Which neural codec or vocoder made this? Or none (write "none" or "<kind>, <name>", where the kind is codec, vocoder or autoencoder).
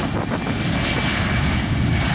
none